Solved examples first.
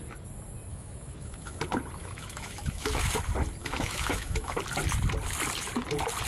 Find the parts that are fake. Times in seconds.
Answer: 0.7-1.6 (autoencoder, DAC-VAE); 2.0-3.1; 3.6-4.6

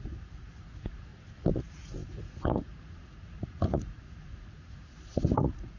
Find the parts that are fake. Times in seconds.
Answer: 0.0-1.1 (vocoder, Vocos); 1.6-5.8

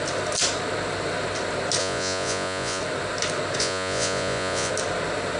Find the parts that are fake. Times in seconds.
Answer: 1.8-2.8 (vocoder, Vocos); 3.6-4.7

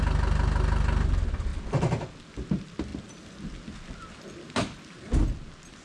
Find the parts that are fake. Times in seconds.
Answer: none

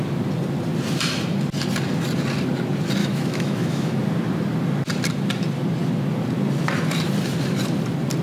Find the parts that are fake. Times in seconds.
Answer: 3.0-4.0 (autoencoder, DAC-VAE)